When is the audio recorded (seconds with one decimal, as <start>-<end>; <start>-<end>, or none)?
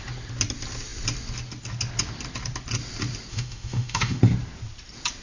0.0-3.3; 4.2-5.2